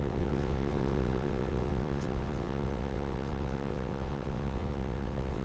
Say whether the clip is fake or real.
fake